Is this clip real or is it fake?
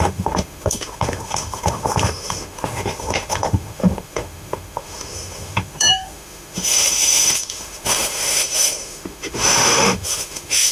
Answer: fake